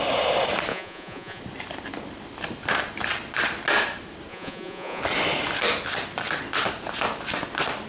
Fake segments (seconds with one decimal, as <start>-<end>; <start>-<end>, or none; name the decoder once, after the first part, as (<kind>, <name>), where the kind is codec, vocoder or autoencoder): 0.7-1.4 (vocoder, Vocos); 4.3-5.0